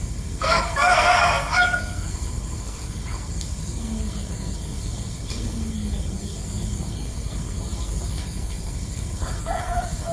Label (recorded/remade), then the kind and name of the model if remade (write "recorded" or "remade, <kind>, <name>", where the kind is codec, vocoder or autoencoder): remade, codec, SNAC